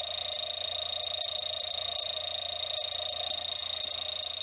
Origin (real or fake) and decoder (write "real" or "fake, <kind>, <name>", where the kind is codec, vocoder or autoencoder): real